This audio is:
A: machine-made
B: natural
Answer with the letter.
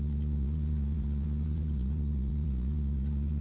A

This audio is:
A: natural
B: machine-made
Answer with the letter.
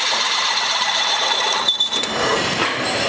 B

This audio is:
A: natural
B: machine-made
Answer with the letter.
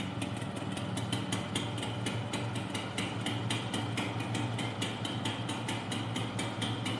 A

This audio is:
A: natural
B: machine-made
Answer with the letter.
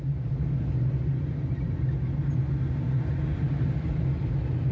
A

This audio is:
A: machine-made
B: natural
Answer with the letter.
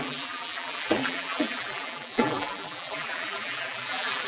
A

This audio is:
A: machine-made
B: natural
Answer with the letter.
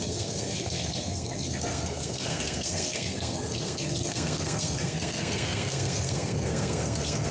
A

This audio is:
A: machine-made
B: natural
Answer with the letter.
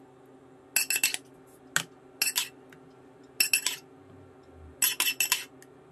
B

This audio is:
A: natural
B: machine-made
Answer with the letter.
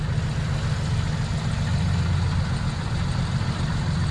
A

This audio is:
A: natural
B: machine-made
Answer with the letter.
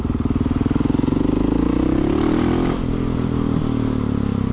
A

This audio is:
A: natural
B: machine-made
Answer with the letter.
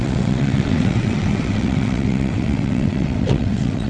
B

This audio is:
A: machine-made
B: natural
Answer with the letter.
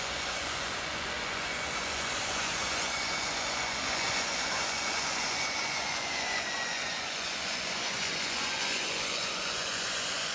A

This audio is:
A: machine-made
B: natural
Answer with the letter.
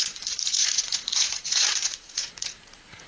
A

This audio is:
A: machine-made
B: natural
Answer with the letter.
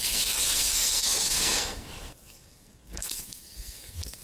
A